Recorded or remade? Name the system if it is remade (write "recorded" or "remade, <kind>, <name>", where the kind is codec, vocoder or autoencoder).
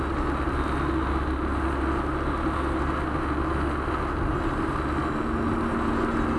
recorded